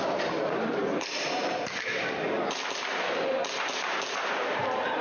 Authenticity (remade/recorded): remade